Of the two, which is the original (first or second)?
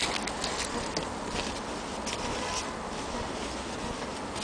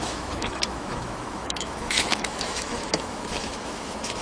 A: first